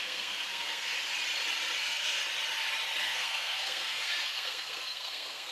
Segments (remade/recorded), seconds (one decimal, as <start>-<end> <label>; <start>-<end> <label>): 0.0-0.9 remade; 0.9-1.8 recorded; 1.8-2.2 remade; 2.2-3.0 recorded; 3.0-5.5 remade